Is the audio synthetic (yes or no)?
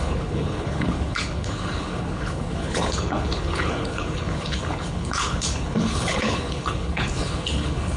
yes